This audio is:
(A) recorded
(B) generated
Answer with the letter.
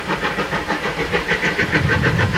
B